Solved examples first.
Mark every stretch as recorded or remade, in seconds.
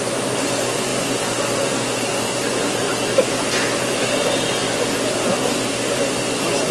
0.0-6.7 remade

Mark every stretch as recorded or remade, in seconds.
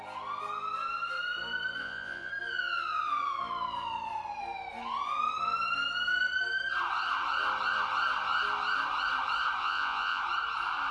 0.0-1.8 recorded; 1.8-2.3 remade; 2.3-9.6 recorded; 9.6-10.2 remade; 10.2-10.9 recorded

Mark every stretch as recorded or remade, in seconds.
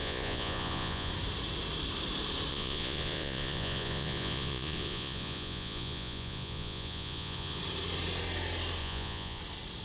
0.0-1.1 remade; 1.1-2.5 recorded; 2.5-7.6 remade; 7.6-8.8 recorded; 8.8-9.4 remade; 9.4-9.8 recorded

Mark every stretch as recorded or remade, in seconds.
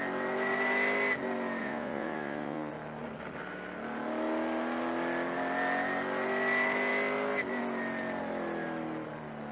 0.0-1.6 recorded; 1.6-2.7 remade; 2.7-9.5 recorded